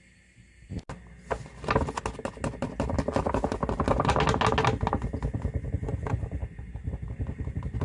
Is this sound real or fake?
real